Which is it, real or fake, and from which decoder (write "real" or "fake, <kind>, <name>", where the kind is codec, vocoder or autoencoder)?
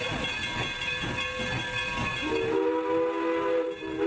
real